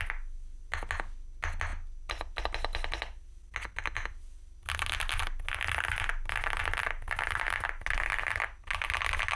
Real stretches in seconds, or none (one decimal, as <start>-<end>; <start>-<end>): 0.0-9.4